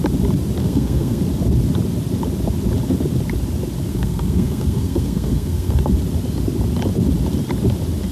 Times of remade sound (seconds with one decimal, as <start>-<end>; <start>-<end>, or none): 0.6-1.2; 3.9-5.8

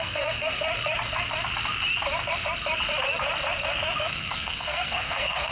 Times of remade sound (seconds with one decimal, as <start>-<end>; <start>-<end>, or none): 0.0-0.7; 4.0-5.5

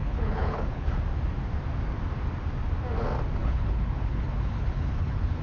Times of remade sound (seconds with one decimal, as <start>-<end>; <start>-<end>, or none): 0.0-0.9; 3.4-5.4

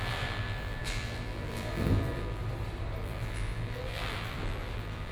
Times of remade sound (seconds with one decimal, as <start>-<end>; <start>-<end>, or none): 0.0-2.4; 3.0-5.1

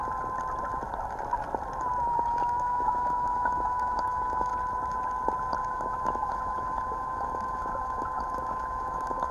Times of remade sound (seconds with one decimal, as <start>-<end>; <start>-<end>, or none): 2.1-4.5; 5.6-9.3

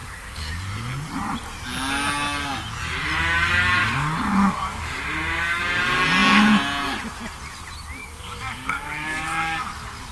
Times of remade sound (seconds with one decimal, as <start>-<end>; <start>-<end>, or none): 0.0-0.5; 3.8-5.6; 8.0-9.7

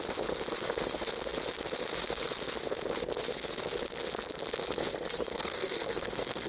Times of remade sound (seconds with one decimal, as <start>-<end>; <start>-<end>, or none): 5.3-6.5